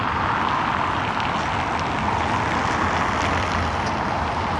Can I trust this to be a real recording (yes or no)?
yes